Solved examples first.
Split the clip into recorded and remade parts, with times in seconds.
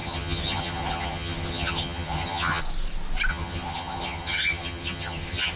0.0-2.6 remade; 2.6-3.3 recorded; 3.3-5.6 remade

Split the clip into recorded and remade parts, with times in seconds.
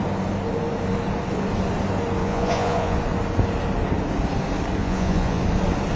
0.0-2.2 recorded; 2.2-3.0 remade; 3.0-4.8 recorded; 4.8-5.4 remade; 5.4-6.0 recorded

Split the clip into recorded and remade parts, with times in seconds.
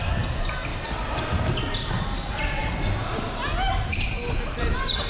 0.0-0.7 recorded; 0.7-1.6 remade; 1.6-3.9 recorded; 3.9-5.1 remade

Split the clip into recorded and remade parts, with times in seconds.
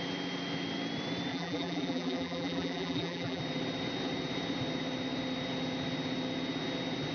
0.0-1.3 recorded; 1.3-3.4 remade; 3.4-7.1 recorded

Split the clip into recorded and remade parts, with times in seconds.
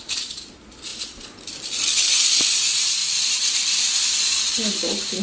0.0-5.2 remade